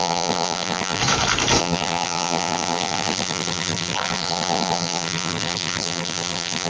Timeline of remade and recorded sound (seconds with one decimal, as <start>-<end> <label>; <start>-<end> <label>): 0.0-1.0 remade; 1.0-1.6 recorded; 1.6-6.7 remade